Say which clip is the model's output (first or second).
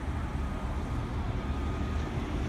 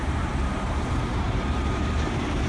second